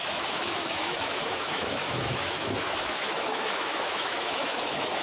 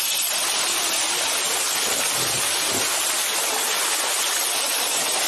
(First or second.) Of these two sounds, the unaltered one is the second